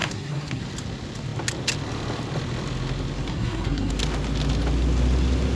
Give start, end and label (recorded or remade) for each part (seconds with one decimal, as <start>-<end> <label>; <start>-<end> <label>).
0.0-0.6 remade; 0.6-3.3 recorded; 3.3-3.9 remade; 3.9-5.6 recorded